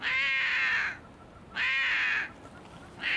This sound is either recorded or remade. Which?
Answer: recorded